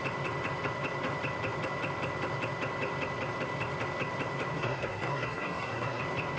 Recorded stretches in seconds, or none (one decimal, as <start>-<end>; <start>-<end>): 0.0-4.5; 6.0-6.4